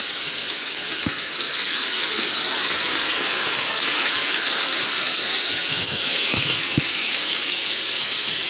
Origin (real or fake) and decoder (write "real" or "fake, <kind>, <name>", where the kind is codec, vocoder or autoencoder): fake, codec, SNAC